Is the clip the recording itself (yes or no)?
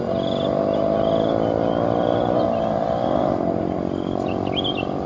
yes